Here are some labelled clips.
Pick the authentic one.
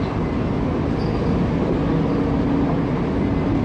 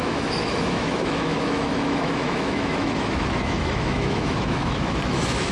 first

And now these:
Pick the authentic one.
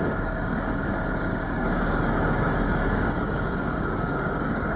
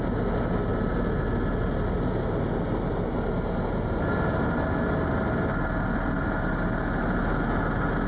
second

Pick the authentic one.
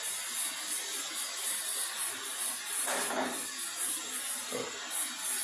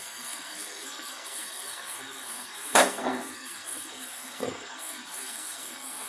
first